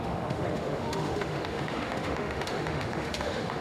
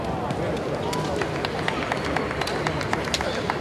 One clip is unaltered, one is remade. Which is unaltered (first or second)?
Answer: second